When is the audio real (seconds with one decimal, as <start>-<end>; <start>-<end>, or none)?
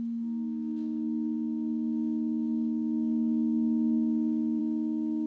4.6-5.3